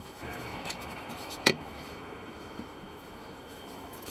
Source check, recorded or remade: remade